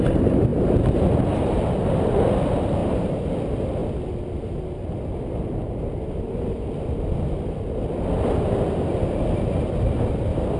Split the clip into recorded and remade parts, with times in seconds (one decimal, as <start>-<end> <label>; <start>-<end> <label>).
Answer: 0.0-0.5 recorded; 0.5-1.2 remade; 1.2-2.8 recorded; 2.8-3.3 remade; 3.3-10.6 recorded